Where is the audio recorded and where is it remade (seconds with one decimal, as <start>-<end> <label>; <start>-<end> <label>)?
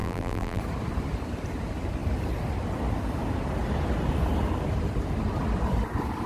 0.0-0.6 remade; 0.6-6.3 recorded